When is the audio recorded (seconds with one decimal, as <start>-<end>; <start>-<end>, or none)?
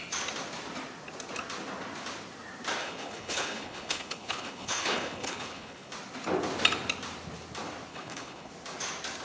0.0-2.8; 5.9-7.9; 8.5-9.2